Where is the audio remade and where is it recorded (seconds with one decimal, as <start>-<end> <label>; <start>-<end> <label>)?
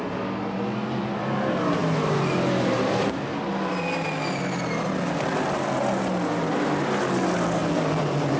0.0-8.4 recorded